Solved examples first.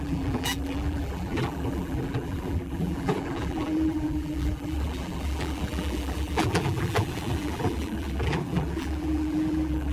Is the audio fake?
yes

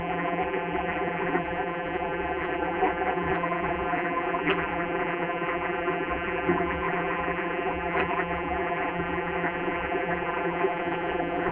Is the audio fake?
yes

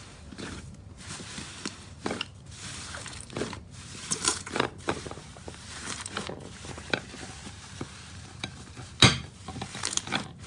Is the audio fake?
yes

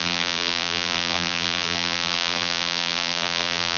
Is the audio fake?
yes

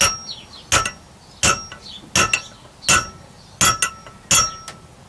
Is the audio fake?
no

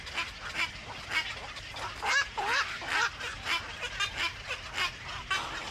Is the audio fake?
no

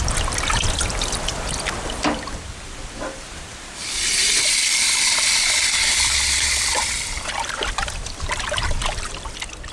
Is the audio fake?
yes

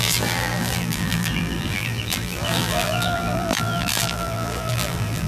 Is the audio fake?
yes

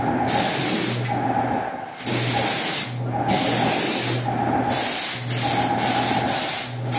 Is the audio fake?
no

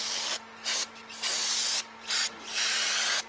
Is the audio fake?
no